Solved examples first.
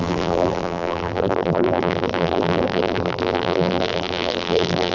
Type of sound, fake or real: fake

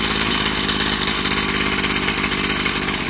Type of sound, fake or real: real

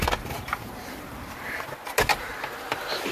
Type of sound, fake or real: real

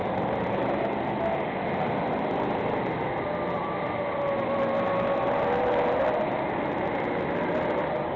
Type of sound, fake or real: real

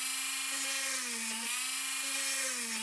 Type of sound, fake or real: real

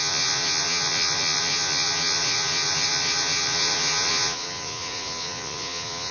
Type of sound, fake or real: fake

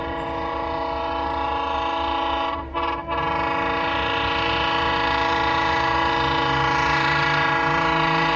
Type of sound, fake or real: fake